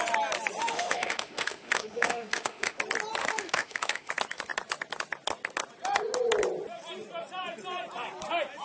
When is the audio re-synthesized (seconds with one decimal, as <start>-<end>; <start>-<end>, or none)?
0.6-2.8; 3.2-4.1